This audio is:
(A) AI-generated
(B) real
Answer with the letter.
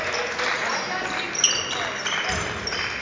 B